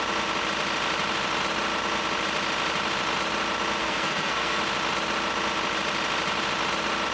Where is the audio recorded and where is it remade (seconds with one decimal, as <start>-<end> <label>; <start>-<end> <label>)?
0.0-3.8 recorded; 3.8-4.6 remade; 4.6-7.1 recorded